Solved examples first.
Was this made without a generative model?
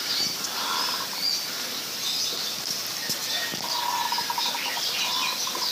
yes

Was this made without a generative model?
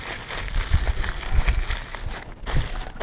yes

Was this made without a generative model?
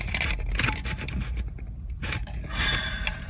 no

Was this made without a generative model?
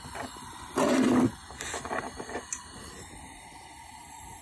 yes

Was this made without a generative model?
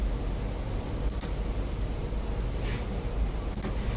yes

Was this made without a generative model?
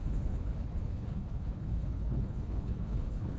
no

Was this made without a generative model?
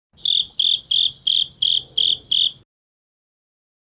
yes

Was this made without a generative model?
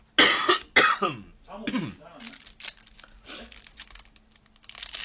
yes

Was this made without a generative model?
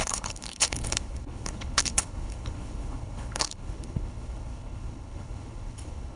no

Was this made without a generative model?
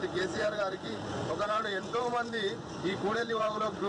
no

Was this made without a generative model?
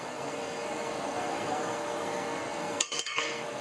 no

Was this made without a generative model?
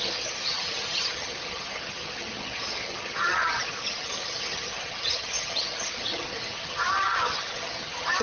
no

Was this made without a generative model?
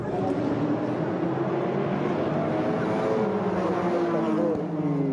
yes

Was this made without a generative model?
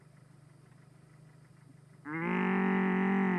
yes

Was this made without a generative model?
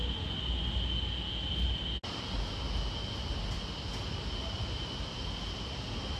yes